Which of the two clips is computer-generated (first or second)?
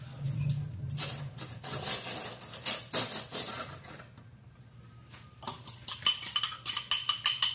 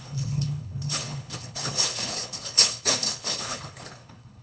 second